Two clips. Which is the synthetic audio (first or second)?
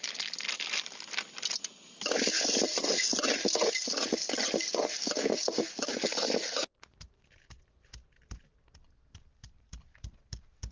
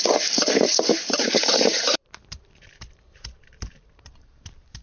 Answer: second